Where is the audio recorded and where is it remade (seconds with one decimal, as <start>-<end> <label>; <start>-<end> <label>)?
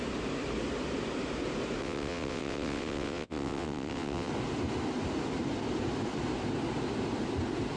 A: 0.0-1.8 recorded; 1.8-4.3 remade; 4.3-7.8 recorded